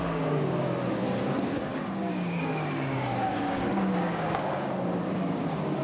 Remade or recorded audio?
remade